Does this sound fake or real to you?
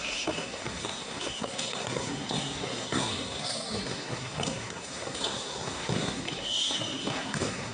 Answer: fake